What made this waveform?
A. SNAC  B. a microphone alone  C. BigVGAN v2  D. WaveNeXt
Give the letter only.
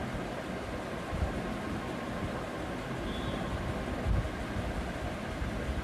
B